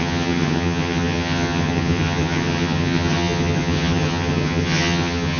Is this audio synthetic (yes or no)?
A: yes